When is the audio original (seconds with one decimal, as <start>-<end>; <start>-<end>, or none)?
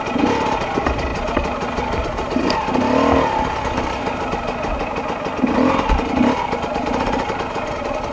0.0-8.1